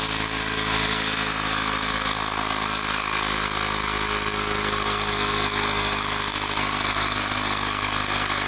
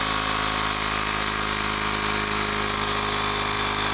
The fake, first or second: first